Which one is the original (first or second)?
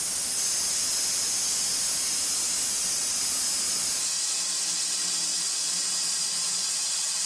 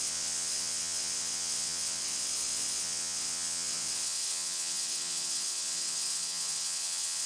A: first